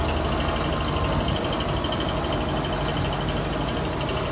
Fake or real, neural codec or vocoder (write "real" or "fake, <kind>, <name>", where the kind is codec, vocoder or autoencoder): real